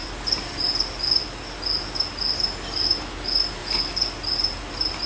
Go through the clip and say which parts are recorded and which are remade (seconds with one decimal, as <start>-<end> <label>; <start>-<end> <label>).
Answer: 0.0-5.1 recorded